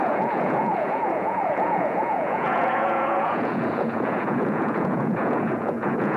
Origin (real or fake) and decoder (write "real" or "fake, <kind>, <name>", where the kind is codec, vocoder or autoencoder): fake, vocoder, Vocos